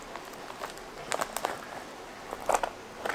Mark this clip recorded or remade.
recorded